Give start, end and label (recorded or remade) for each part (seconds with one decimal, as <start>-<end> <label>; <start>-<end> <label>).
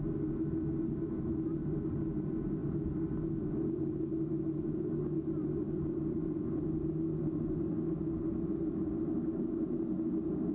0.0-10.5 recorded